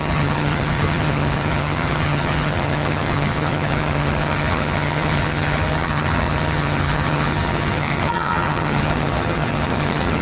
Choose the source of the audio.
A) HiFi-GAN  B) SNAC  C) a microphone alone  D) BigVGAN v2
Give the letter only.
A